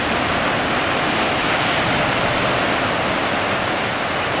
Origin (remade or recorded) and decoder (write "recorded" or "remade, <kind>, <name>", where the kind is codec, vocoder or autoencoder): recorded